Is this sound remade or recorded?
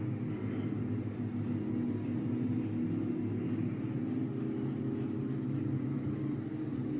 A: recorded